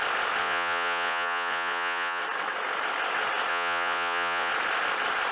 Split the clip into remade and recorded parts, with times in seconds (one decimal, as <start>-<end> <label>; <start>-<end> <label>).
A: 0.0-0.4 recorded; 0.4-2.2 remade; 2.2-3.5 recorded; 3.5-4.5 remade; 4.5-5.3 recorded